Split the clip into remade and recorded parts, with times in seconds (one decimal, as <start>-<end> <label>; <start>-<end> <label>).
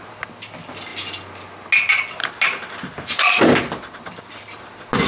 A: 0.0-5.1 recorded